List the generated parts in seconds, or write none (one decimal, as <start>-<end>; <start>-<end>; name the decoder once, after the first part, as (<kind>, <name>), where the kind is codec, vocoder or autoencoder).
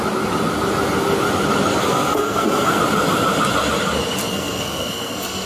1.8-2.8 (codec, SNAC); 4.3-5.5